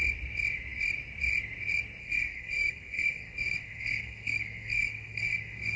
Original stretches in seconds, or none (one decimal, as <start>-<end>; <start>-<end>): 0.0-2.0